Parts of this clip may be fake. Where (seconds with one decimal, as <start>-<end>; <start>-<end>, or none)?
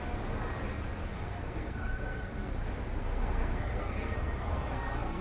1.0-2.5; 3.0-5.2